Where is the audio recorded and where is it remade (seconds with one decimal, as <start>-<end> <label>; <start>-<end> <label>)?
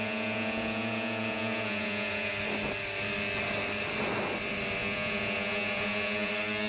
0.0-2.3 remade; 2.3-4.8 recorded; 4.8-6.3 remade; 6.3-6.7 recorded